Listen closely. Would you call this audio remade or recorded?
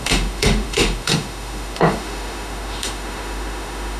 remade